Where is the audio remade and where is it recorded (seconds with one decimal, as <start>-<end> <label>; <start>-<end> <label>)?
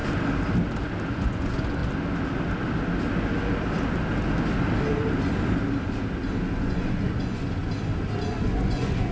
0.0-1.1 recorded; 1.1-1.8 remade; 1.8-6.6 recorded; 6.6-7.6 remade; 7.6-8.3 recorded; 8.3-9.1 remade